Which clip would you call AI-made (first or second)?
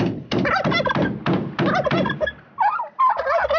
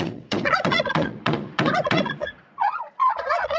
second